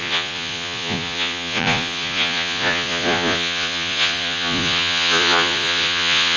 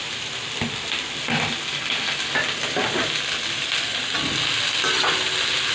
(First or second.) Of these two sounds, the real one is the second